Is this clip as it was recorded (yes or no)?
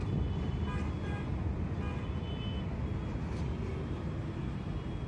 yes